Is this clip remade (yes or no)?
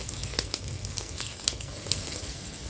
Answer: yes